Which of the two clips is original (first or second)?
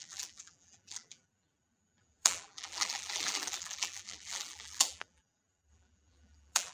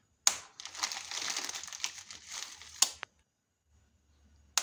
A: second